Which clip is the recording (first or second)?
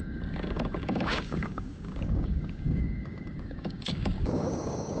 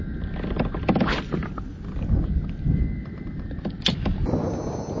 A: second